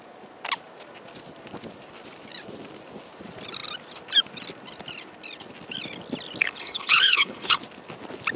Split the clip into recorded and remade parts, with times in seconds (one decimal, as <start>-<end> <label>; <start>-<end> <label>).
0.0-6.4 recorded; 6.4-7.6 remade; 7.6-8.4 recorded